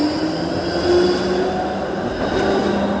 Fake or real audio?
real